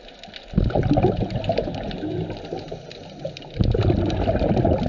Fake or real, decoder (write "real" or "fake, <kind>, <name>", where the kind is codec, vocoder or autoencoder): real